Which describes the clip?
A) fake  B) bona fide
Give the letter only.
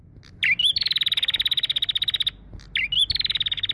B